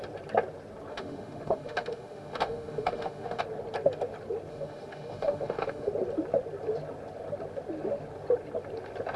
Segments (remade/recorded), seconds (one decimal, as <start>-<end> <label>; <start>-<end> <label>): 0.0-0.9 recorded; 0.9-3.4 remade; 3.4-4.5 recorded; 4.5-5.9 remade; 5.9-9.2 recorded

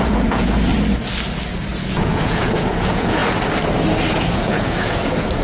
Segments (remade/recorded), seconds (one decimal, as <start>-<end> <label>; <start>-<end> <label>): 0.0-0.7 remade; 0.7-1.8 recorded; 1.8-3.2 remade; 3.2-4.1 recorded; 4.1-5.4 remade

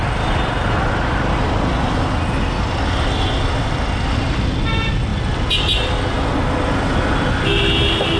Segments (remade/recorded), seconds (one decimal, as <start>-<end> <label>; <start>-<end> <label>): 0.0-8.2 recorded

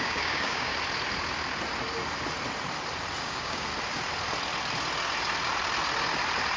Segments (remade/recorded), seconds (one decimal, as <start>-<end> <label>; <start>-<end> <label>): 0.0-0.7 remade; 0.7-3.2 recorded; 3.2-3.7 remade; 3.7-6.6 recorded

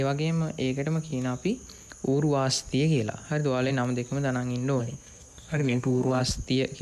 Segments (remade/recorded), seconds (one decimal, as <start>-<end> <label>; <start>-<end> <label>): 0.0-4.8 recorded; 4.8-6.2 remade; 6.2-6.8 recorded

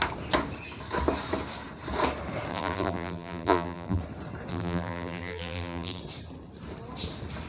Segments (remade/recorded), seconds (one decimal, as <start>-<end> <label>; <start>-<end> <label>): 0.0-2.5 recorded; 2.5-4.0 remade; 4.0-4.5 recorded; 4.5-6.0 remade; 6.0-7.5 recorded

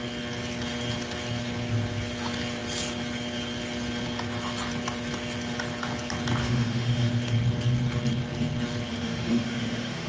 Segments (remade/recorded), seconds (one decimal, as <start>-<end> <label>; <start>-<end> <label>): 0.0-6.4 recorded; 6.4-7.3 remade; 7.3-8.9 recorded; 8.9-10.1 remade

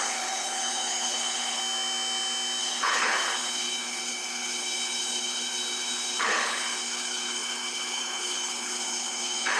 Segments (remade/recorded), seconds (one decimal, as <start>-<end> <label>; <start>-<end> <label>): 0.0-1.6 remade; 1.6-2.6 recorded; 2.6-9.6 remade